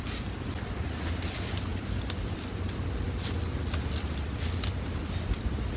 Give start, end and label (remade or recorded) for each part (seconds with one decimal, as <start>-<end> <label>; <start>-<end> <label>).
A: 0.0-5.8 recorded